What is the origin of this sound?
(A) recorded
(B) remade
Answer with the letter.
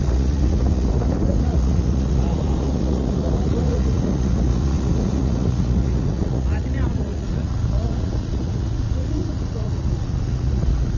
B